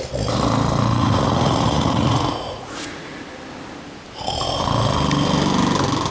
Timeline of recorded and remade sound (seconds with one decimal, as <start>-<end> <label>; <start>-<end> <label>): 0.0-0.9 recorded; 0.9-3.2 remade; 3.2-6.1 recorded

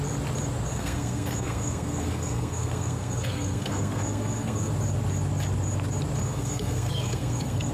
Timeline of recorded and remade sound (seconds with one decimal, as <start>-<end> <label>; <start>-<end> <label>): 0.0-0.7 recorded; 0.7-4.7 remade; 4.7-6.2 recorded; 6.2-7.7 remade

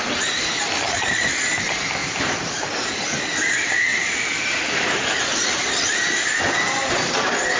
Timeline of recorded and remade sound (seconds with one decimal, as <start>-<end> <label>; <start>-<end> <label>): 0.0-2.0 recorded; 2.0-2.7 remade; 2.7-3.9 recorded; 3.9-5.2 remade; 5.2-7.6 recorded

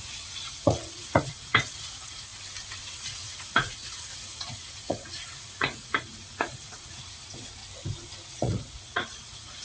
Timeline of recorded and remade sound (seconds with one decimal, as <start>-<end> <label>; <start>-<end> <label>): 0.0-2.3 remade; 2.3-2.9 recorded; 2.9-7.6 remade; 7.6-8.3 recorded; 8.3-9.6 remade

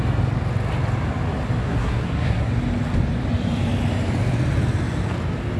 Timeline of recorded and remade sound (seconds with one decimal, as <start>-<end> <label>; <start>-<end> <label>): 0.0-1.6 recorded; 1.6-2.5 remade; 2.5-5.6 recorded